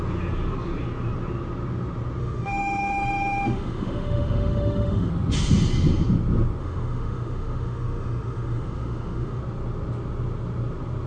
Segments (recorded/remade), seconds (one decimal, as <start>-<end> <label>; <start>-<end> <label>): 0.0-2.2 recorded; 2.2-5.1 remade; 5.1-6.6 recorded; 6.6-9.4 remade; 9.4-11.1 recorded